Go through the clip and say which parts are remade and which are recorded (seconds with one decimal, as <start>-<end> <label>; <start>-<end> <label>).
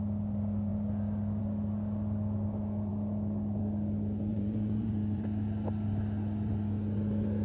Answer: 0.0-4.3 recorded; 4.3-4.9 remade; 4.9-7.4 recorded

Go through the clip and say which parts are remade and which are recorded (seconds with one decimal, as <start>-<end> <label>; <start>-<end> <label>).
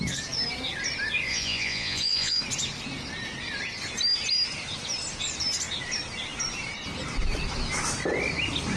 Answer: 0.0-1.3 recorded; 1.3-2.4 remade; 2.4-8.8 recorded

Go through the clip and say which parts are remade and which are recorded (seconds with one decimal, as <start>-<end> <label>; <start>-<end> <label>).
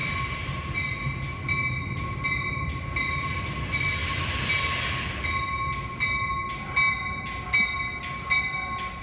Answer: 0.0-9.0 recorded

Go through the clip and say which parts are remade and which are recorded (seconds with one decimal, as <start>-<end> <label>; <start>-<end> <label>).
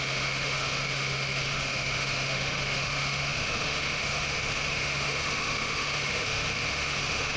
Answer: 0.0-7.4 remade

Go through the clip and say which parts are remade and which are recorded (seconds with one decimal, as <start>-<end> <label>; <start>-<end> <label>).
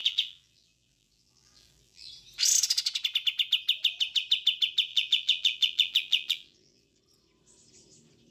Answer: 0.0-2.1 remade; 2.1-4.9 recorded; 4.9-7.0 remade; 7.0-8.3 recorded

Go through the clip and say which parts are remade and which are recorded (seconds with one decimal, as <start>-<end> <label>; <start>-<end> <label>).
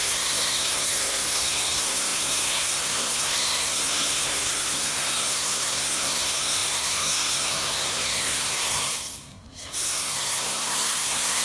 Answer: 0.0-11.4 remade